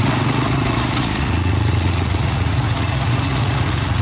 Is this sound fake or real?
fake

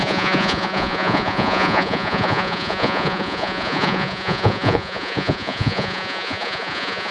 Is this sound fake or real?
fake